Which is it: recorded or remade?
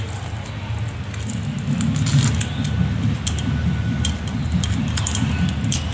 recorded